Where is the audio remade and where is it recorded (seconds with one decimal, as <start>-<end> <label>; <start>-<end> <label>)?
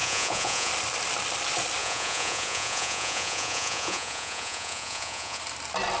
0.0-0.7 remade; 0.7-1.8 recorded; 1.8-5.4 remade; 5.4-6.0 recorded